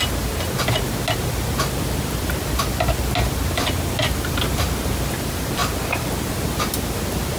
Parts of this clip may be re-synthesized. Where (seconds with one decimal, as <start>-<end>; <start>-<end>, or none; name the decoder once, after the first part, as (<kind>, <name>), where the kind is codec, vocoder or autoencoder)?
none